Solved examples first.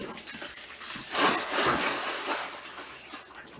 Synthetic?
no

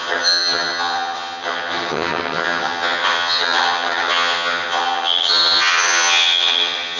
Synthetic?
yes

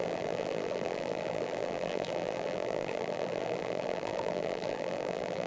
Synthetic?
yes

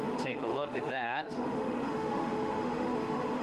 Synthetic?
yes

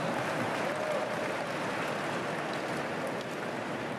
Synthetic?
no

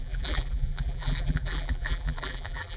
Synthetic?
yes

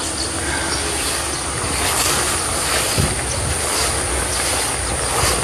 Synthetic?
no